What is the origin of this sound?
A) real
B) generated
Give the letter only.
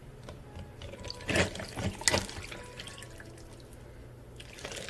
A